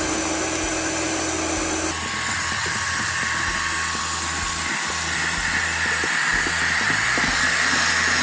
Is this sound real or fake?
real